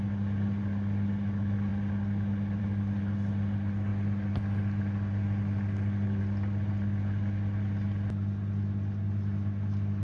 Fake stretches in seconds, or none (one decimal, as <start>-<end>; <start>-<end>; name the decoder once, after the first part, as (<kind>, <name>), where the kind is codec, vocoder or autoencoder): none